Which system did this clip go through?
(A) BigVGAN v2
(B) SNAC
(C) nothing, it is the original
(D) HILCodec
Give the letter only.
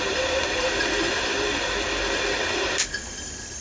A